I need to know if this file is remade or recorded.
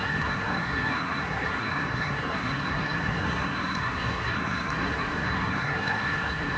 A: remade